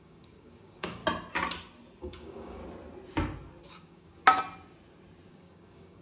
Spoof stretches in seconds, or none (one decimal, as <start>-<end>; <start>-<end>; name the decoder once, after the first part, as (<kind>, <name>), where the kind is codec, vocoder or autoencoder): 0.0-1.0 (codec, DAC); 2.0-2.6; 3.7-4.2; 5.3-6.0

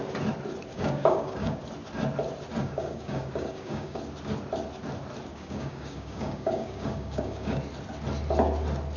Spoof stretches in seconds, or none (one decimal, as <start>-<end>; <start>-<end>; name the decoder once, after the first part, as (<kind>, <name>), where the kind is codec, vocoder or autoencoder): 0.7-1.6 (codec, DAC); 2.5-4.0; 5.3-7.6

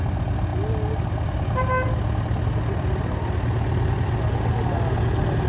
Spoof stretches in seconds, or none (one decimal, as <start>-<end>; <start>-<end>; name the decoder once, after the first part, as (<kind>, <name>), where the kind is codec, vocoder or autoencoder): none

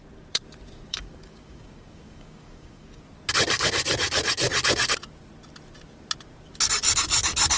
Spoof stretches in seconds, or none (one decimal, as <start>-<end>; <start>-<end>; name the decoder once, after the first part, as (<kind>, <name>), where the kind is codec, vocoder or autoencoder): 0.9-3.0 (codec, DAC)

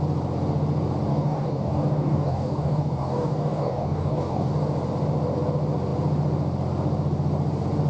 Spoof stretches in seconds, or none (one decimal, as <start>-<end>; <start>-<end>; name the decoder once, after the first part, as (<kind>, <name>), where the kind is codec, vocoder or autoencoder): 1.1-4.5 (codec, DAC)